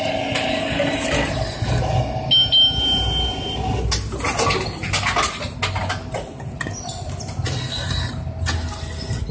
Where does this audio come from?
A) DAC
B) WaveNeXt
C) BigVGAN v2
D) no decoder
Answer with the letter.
D